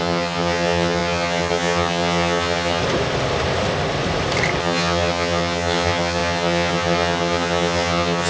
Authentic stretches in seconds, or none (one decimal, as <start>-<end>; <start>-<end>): 2.8-4.6